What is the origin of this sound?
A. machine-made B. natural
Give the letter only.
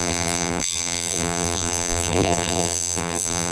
A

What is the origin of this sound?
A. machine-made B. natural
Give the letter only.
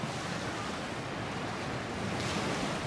B